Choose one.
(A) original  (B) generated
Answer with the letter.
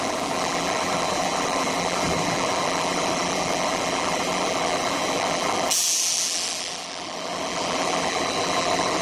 B